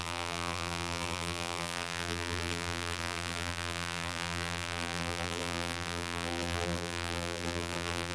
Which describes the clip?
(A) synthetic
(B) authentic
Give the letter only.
A